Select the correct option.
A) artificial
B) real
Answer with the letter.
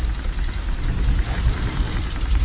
B